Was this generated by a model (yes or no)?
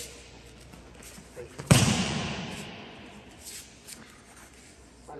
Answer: yes